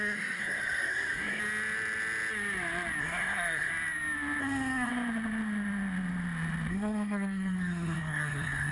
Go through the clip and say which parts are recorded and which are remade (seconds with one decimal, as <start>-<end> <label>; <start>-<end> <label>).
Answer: 0.0-1.4 remade; 1.4-3.0 recorded; 3.0-3.7 remade; 3.7-4.4 recorded; 4.4-4.9 remade; 4.9-6.7 recorded; 6.7-8.7 remade